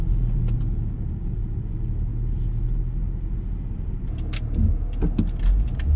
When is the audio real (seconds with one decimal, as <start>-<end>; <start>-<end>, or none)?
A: 0.0-6.0